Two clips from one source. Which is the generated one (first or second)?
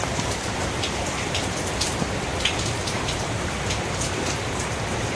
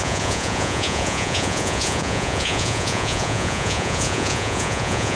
second